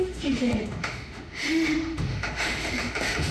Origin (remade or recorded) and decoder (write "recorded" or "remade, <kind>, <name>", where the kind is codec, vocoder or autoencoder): remade, autoencoder, DAC-VAE